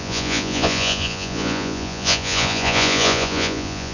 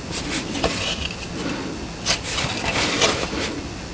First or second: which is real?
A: second